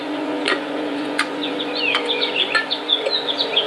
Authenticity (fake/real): fake